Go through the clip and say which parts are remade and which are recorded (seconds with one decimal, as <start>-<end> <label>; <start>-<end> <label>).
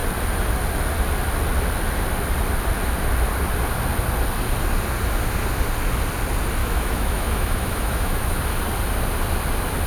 0.0-6.6 recorded; 6.6-8.4 remade; 8.4-9.9 recorded